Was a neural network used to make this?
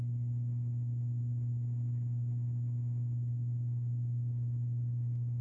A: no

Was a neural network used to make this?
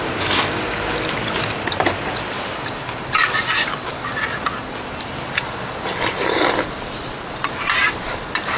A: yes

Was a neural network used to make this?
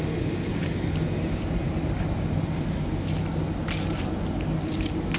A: no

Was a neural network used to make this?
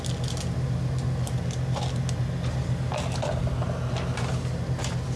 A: no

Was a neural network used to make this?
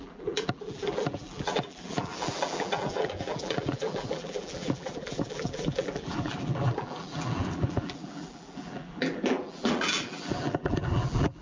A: yes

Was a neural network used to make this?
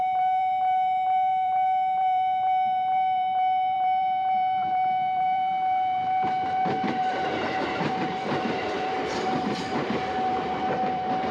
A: yes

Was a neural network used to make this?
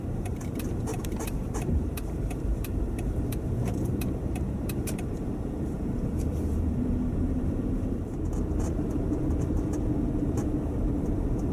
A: yes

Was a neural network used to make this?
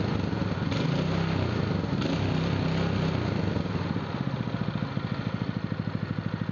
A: no